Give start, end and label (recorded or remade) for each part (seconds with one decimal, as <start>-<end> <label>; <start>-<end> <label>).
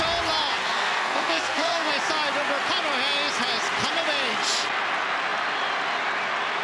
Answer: 0.0-0.6 recorded; 0.6-1.9 remade; 1.9-6.6 recorded